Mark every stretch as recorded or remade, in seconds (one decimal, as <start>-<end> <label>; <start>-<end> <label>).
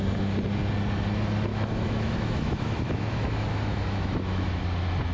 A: 0.0-1.5 recorded; 1.5-4.6 remade; 4.6-5.1 recorded